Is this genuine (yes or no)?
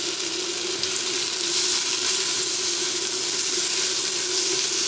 yes